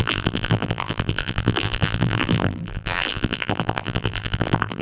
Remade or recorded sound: remade